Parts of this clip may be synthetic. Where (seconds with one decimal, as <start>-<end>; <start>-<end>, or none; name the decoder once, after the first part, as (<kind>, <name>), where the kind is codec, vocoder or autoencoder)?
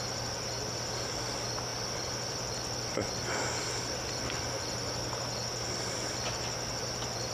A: none